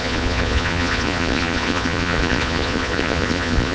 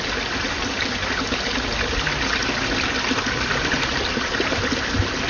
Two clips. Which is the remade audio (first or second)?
first